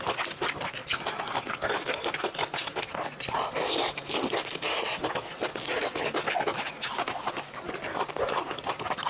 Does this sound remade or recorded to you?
recorded